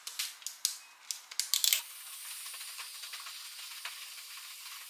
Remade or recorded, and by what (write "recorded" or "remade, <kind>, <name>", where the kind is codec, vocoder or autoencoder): recorded